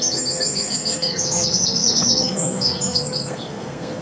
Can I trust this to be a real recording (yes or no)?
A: no